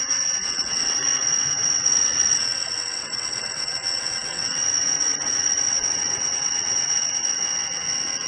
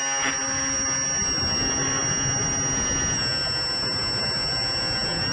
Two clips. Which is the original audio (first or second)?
second